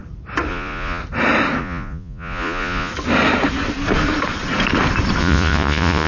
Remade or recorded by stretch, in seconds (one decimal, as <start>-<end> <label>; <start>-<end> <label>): 0.0-0.5 recorded; 0.5-1.0 remade; 1.0-1.6 recorded; 1.6-2.9 remade; 2.9-5.2 recorded; 5.2-6.1 remade